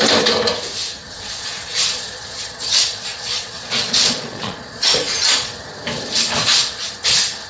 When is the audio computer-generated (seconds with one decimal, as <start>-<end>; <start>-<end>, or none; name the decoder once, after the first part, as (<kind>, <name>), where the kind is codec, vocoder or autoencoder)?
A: 1.0-5.5 (vocoder, Vocos)